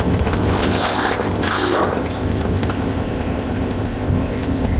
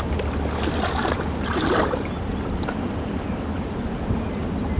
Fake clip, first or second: first